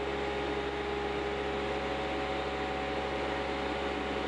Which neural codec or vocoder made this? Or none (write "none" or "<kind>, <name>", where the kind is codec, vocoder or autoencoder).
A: none